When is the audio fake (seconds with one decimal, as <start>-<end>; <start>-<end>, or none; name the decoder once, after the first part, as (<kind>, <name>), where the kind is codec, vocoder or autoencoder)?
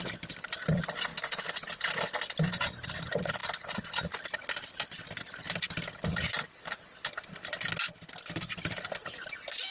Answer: none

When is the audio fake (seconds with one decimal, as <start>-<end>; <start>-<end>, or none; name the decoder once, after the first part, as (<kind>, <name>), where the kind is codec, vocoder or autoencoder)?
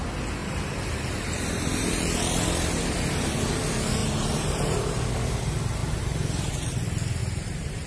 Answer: 0.4-2.2 (vocoder, BigVGAN v2); 4.0-5.0; 5.8-6.8; 7.2-7.9